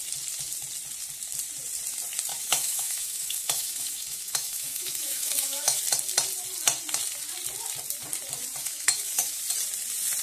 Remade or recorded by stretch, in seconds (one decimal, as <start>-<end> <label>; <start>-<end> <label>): 0.0-2.3 recorded; 2.3-5.8 remade; 5.8-8.6 recorded; 8.6-9.4 remade; 9.4-10.2 recorded